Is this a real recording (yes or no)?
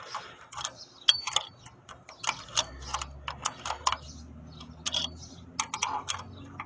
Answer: yes